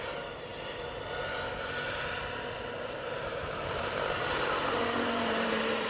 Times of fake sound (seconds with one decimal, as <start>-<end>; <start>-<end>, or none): 0.0-0.5; 1.6-5.9